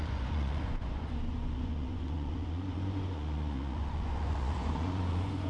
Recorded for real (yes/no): no